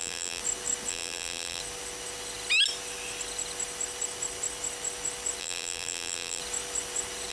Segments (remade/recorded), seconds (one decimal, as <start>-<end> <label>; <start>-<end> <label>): 0.0-0.4 remade; 0.4-0.9 recorded; 0.9-1.6 remade; 1.6-5.4 recorded; 5.4-6.4 remade; 6.4-7.3 recorded